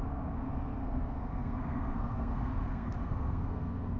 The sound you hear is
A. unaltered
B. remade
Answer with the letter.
B